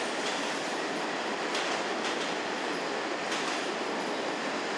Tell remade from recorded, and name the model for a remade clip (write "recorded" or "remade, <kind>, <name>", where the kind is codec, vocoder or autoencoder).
recorded